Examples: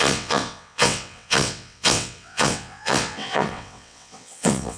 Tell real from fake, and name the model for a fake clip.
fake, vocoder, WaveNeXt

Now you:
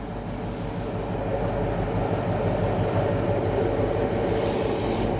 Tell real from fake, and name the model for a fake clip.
real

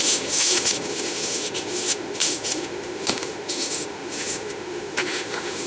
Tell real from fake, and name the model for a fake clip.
fake, autoencoder, DAC-VAE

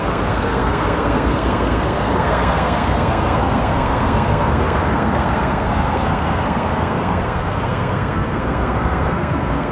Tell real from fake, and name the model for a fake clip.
fake, codec, SNAC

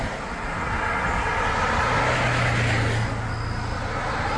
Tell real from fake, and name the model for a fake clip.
real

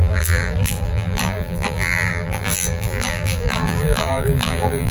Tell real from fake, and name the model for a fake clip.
fake, vocoder, BigVGAN v2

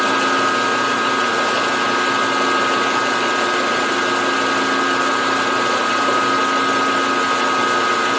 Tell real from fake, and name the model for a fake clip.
real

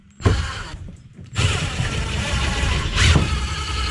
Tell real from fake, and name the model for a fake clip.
fake, vocoder, BigVGAN v2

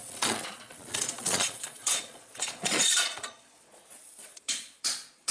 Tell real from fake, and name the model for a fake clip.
fake, vocoder, Vocos